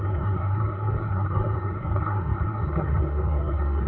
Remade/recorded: remade